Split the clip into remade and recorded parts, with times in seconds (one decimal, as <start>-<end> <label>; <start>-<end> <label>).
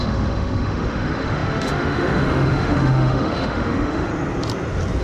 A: 0.0-4.1 remade; 4.1-5.0 recorded